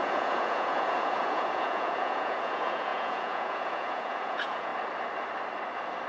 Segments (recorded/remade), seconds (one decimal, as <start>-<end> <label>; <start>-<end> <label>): 0.0-4.7 remade; 4.7-6.1 recorded

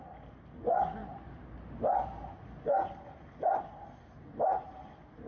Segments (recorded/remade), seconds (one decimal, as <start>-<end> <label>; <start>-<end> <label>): 0.0-5.3 recorded